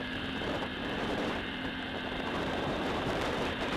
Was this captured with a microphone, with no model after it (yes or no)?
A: no